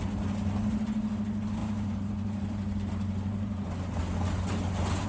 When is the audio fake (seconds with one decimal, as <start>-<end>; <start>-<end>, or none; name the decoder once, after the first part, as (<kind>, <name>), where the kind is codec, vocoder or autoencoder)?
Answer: 1.6-4.0 (vocoder, BigVGAN v2)